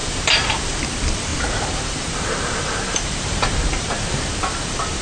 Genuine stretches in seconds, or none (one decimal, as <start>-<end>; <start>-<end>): 0.8-1.3; 4.3-5.0